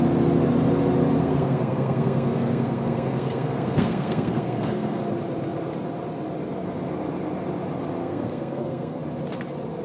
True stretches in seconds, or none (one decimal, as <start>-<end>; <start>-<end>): 0.0-1.2; 5.0-8.0; 9.0-9.8